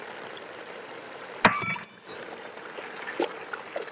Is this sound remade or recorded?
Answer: recorded